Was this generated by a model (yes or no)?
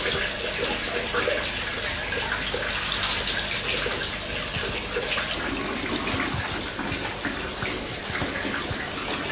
no